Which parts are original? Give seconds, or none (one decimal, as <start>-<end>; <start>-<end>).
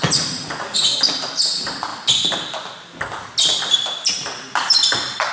0.0-5.3